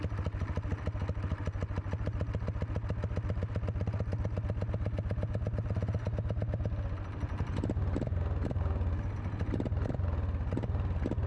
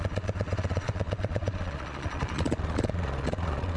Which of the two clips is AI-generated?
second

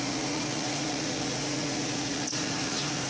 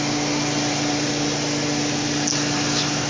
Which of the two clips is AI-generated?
first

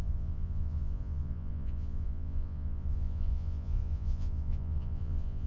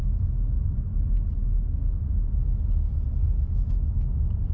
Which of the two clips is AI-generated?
first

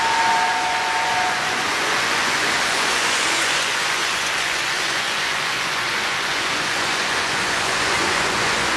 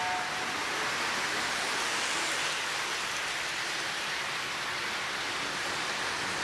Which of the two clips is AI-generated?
first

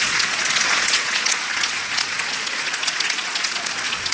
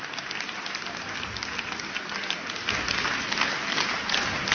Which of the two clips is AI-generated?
first